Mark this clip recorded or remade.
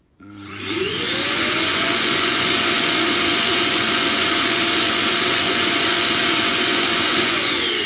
remade